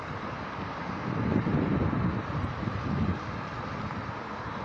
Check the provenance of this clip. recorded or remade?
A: recorded